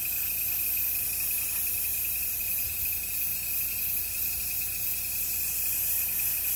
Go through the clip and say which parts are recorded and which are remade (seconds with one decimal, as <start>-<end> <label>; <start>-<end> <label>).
0.0-1.9 recorded; 1.9-2.8 remade; 2.8-3.3 recorded; 3.3-5.6 remade; 5.6-6.6 recorded